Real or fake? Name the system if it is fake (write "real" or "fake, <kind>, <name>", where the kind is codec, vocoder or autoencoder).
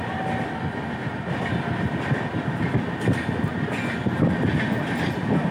real